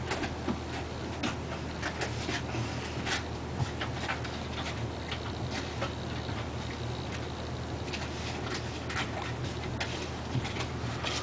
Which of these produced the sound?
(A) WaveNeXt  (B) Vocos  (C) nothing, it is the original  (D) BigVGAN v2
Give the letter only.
C